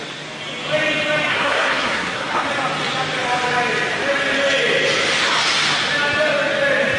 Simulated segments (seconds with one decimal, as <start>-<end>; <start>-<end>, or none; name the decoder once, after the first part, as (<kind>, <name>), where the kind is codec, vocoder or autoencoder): 1.3-2.5 (codec, SNAC)